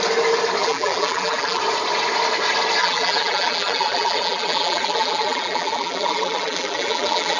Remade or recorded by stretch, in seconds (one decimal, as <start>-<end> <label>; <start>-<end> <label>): 0.0-0.6 recorded; 0.6-1.6 remade; 1.6-2.8 recorded; 2.8-7.4 remade